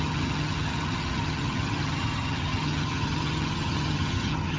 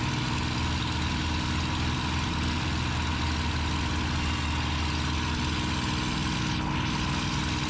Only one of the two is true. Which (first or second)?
second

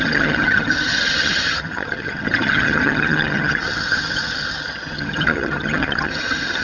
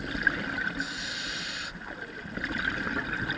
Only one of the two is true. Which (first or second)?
second